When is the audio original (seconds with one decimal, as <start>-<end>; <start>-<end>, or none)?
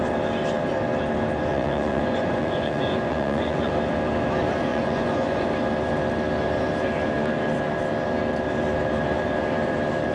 0.0-1.5; 3.7-4.7; 5.5-10.1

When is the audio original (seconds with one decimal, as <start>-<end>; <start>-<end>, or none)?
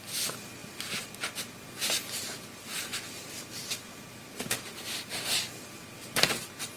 0.0-0.6; 1.1-6.8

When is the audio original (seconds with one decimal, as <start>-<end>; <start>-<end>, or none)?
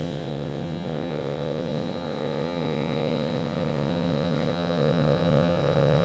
none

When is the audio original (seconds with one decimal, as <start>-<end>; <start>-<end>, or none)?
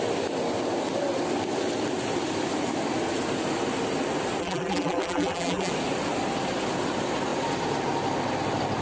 0.0-4.4; 5.7-8.8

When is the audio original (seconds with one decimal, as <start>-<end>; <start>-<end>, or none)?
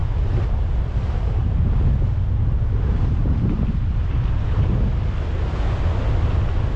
0.0-6.8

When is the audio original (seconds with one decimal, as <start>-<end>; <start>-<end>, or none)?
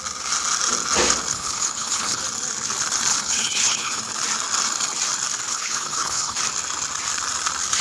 0.0-1.3; 2.2-3.1; 4.0-5.5; 6.4-7.8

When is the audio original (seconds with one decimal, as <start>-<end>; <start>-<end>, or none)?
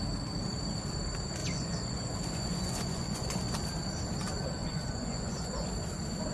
0.0-1.4; 3.4-4.6; 5.7-6.3